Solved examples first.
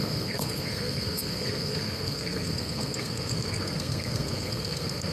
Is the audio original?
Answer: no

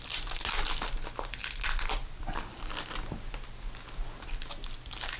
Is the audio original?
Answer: yes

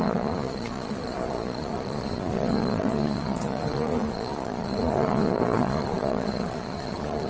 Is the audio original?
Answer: no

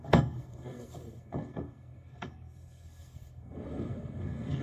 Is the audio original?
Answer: no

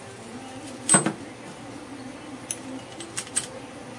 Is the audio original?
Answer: yes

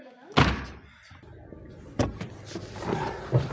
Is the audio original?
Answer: yes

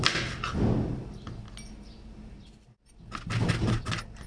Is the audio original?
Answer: yes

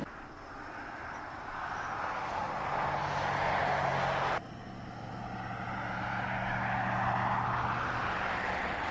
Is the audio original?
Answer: yes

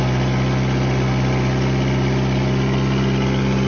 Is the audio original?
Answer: yes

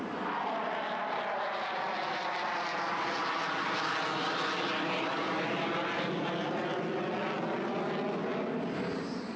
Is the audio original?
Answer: yes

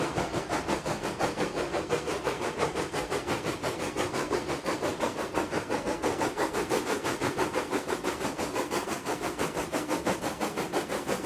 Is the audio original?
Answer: no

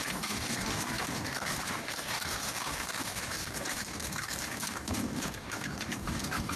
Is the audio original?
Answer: no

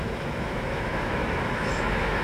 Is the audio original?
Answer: no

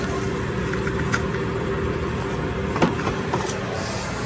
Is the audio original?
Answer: yes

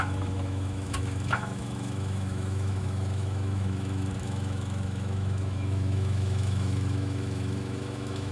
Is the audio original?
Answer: no